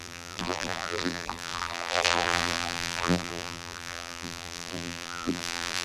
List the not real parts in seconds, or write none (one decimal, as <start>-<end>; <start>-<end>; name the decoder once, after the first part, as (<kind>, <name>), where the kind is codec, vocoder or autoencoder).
0.0-5.8 (vocoder, BigVGAN v2)